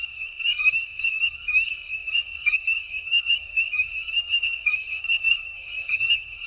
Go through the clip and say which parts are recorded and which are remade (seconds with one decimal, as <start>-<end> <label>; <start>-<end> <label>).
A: 0.0-6.5 remade